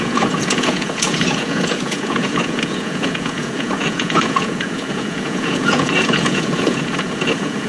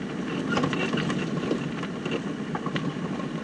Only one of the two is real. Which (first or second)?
second